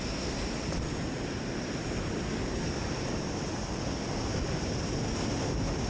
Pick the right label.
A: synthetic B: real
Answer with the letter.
B